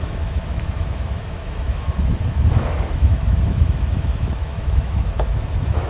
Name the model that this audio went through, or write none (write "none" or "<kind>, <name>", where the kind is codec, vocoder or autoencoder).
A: autoencoder, DAC-VAE